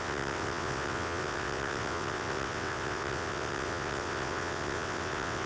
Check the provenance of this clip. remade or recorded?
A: remade